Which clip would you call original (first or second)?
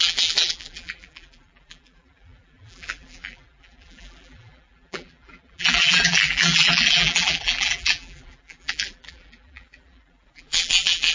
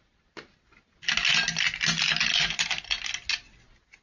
second